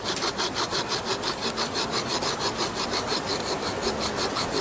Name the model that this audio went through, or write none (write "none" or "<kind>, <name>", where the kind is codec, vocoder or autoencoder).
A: none